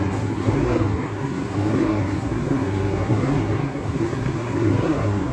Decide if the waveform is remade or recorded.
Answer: remade